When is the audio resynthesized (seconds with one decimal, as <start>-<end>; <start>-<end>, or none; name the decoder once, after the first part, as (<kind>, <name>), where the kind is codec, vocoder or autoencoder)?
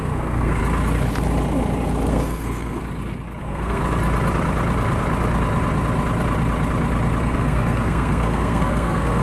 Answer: 0.0-0.6 (codec, SNAC); 2.1-2.8; 3.4-3.8; 7.2-9.2